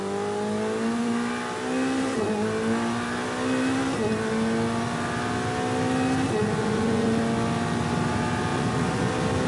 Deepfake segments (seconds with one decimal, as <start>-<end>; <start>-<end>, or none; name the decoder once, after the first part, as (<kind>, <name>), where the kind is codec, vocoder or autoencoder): 6.4-7.2 (vocoder, Vocos); 8.5-9.1